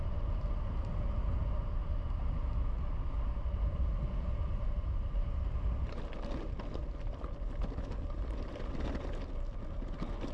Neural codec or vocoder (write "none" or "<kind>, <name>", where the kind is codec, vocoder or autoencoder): none